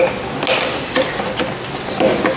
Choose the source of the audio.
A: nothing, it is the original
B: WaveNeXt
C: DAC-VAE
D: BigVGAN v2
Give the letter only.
A